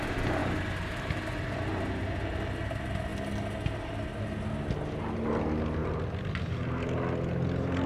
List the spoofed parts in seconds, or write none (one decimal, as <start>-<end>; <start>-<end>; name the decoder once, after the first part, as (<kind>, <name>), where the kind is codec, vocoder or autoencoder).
none